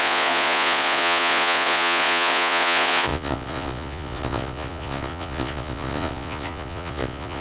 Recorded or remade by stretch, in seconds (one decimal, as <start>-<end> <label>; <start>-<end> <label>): 0.0-7.4 remade